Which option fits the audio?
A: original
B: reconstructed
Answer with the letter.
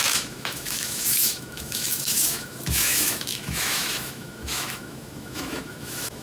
B